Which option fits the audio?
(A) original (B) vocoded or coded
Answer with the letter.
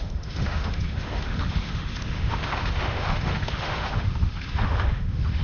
B